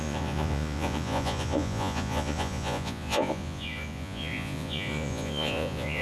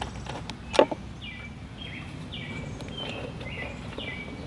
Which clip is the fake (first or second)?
first